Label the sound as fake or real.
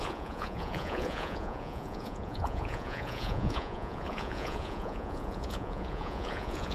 fake